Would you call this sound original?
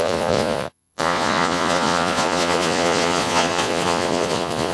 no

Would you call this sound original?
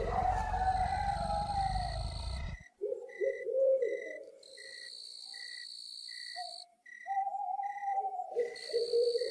no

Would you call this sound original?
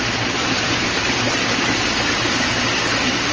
yes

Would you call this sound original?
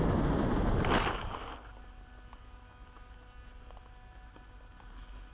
yes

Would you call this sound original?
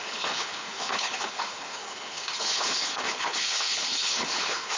no